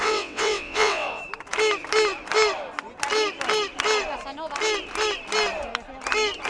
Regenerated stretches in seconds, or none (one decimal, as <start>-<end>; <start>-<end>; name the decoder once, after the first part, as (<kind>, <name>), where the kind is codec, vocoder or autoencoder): 0.0-1.2 (vocoder, WaveNeXt)